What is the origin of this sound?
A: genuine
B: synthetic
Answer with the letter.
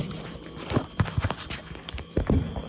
B